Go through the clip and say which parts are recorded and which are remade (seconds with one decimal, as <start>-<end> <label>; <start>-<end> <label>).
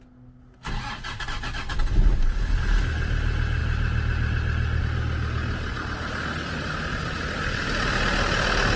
0.0-8.8 recorded